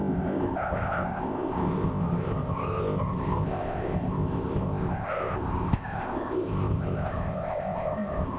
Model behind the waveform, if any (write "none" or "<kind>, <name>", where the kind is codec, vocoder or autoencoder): codec, ZipCodec